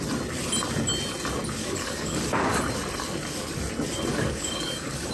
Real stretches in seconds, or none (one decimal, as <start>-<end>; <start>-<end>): 0.0-1.6; 2.6-4.1